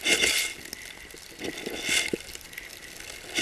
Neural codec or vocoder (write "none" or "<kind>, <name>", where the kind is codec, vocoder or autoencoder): none